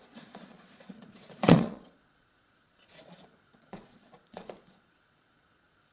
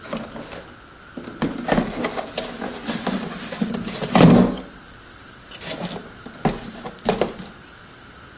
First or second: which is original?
second